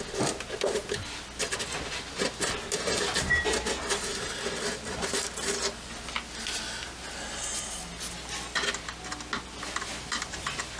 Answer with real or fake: real